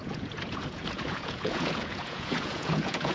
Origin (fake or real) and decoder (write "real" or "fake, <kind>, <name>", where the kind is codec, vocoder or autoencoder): fake, vocoder, Vocos